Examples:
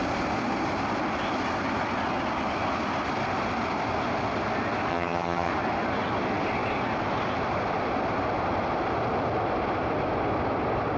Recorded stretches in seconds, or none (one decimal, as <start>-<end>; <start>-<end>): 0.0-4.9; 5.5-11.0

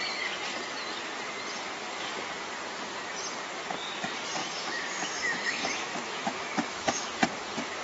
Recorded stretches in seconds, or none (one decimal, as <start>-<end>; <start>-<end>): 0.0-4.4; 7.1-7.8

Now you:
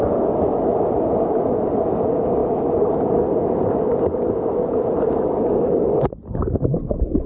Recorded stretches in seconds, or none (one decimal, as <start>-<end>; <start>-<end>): 0.0-7.3

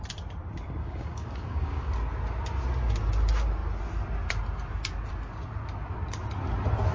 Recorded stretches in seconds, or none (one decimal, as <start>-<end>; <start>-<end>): 0.0-0.8; 1.9-6.9

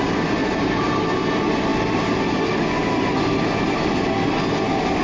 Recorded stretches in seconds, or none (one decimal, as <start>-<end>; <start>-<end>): 0.0-0.4; 1.0-5.0

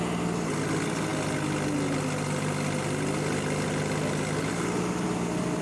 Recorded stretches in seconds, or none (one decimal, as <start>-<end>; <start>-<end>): 0.0-5.6

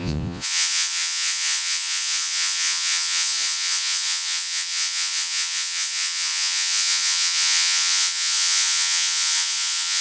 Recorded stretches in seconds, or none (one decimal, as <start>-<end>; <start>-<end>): none

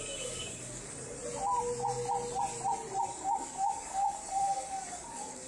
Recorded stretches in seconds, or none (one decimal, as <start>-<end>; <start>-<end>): 1.2-3.0